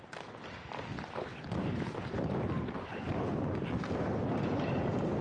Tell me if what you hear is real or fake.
real